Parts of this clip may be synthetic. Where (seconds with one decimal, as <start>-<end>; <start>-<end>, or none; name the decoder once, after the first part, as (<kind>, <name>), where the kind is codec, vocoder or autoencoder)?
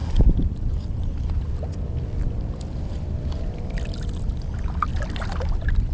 none